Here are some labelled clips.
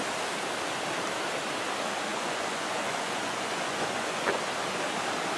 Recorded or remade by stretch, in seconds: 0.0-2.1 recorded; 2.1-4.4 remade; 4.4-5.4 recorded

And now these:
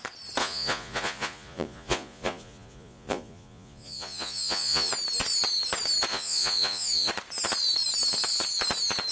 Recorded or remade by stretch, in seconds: 0.0-0.4 recorded; 0.4-4.9 remade; 4.9-6.1 recorded; 6.1-7.1 remade; 7.1-9.1 recorded